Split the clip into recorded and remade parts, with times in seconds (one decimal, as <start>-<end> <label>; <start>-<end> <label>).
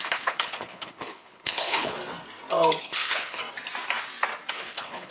0.0-2.0 remade; 2.0-2.8 recorded; 2.8-3.4 remade; 3.4-4.5 recorded; 4.5-5.1 remade